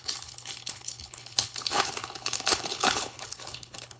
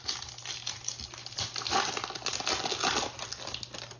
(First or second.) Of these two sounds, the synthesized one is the first